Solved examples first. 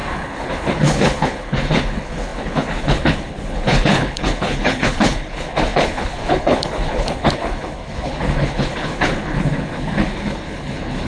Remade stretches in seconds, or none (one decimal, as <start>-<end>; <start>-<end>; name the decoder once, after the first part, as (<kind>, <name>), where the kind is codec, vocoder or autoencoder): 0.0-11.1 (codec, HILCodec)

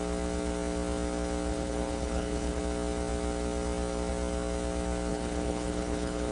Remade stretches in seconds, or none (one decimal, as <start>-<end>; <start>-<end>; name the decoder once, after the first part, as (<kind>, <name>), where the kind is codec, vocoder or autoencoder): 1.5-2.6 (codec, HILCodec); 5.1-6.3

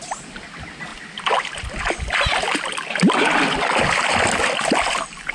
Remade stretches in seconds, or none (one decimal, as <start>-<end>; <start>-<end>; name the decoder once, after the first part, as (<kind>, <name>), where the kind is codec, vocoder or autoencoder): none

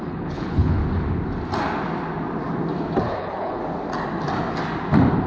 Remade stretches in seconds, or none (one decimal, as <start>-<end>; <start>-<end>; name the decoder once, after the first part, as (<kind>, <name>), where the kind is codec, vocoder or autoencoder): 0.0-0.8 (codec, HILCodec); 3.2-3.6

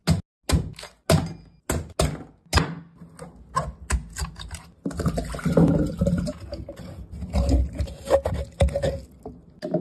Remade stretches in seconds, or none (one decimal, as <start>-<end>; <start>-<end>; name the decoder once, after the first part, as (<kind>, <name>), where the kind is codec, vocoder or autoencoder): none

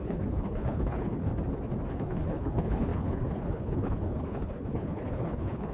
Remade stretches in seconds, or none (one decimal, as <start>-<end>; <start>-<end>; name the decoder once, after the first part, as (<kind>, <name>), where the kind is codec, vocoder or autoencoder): 0.0-1.3 (codec, HILCodec); 1.9-5.7